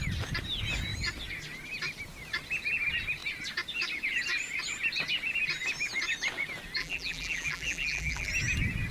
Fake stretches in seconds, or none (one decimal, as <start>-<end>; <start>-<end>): 6.8-8.3